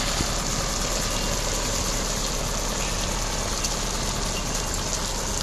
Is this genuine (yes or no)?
yes